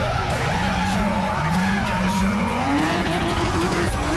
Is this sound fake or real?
fake